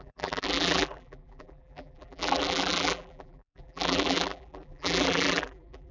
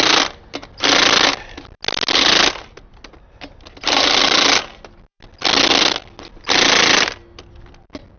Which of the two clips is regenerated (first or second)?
first